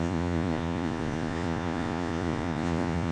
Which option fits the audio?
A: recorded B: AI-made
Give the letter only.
B